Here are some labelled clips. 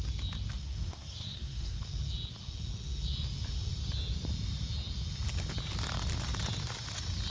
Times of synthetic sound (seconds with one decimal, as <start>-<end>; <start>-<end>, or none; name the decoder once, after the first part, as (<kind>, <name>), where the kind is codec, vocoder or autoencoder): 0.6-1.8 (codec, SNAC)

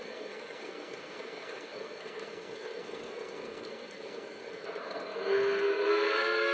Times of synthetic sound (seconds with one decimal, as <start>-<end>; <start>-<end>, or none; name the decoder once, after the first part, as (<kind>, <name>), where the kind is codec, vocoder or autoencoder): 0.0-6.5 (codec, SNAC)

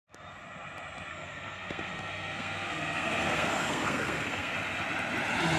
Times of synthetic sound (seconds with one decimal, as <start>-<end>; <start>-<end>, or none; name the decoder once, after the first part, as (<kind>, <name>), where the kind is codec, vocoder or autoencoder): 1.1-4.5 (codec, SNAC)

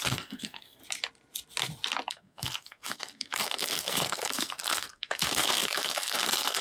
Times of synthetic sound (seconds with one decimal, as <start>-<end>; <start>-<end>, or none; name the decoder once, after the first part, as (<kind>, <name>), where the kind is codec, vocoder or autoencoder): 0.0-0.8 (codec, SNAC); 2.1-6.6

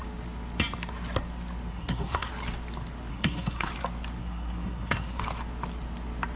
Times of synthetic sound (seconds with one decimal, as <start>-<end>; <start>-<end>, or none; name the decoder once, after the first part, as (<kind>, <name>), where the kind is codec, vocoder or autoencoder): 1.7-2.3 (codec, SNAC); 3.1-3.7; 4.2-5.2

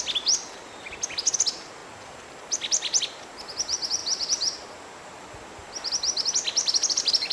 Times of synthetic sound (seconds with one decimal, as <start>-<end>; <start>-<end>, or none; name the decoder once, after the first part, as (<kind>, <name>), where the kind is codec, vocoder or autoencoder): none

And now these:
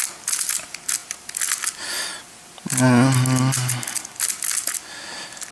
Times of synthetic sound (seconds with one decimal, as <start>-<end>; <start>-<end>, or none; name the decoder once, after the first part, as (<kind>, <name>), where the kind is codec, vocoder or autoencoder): none